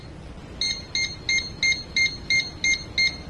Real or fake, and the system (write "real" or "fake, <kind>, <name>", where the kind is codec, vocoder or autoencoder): real